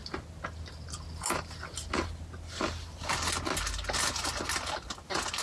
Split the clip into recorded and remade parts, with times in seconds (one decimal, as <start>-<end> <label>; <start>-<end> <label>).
0.0-5.4 recorded